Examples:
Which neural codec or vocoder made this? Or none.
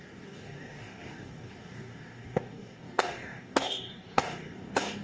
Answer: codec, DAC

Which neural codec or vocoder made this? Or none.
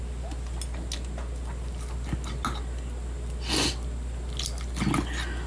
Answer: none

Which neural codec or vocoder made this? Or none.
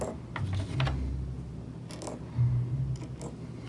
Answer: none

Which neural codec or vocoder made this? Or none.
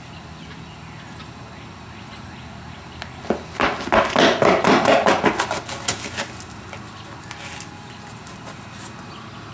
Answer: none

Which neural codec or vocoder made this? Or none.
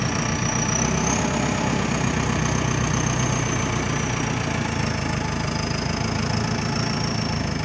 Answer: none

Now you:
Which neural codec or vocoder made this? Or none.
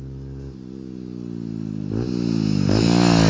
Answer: none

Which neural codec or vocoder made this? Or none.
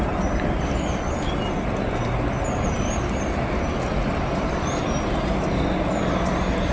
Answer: none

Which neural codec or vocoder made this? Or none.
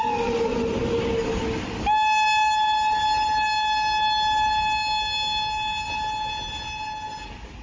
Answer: none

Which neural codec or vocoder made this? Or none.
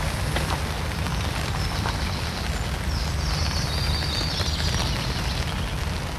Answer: none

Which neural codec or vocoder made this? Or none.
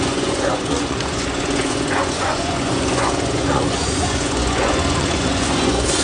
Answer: vocoder, Vocos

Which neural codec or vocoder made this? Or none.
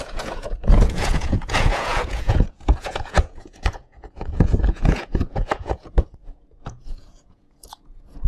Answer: vocoder, Vocos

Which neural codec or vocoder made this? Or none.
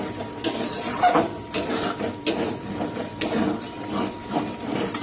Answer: none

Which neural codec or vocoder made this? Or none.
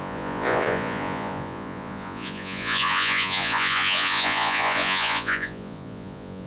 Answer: vocoder, Vocos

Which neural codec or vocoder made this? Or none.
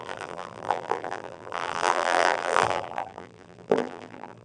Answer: vocoder, BigVGAN v2